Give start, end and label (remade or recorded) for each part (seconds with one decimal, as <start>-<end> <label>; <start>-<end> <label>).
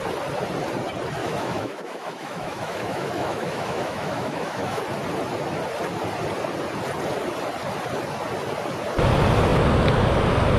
0.0-1.2 recorded; 1.2-4.8 remade; 4.8-10.6 recorded